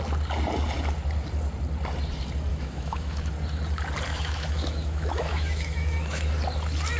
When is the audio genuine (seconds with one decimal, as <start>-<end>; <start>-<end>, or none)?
0.0-2.5; 3.3-4.1; 6.3-7.0